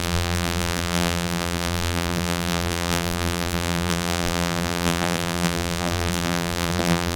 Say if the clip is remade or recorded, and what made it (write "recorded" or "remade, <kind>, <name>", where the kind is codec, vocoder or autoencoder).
remade, vocoder, BigVGAN v2